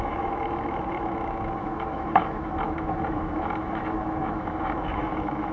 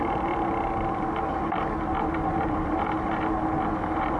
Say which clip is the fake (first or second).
first